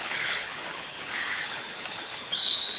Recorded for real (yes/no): no